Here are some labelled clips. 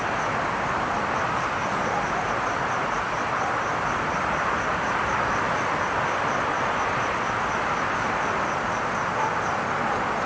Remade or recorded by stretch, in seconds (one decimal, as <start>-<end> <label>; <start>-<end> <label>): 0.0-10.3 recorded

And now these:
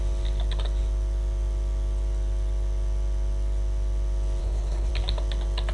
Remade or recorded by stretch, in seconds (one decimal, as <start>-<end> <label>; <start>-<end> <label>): 0.0-4.4 recorded; 4.4-4.9 remade; 4.9-5.7 recorded

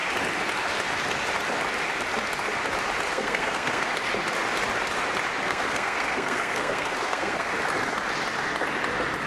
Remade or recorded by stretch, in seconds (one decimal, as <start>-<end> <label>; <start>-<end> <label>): 0.0-3.1 recorded; 3.1-3.9 remade; 3.9-5.4 recorded; 5.4-7.5 remade; 7.5-9.3 recorded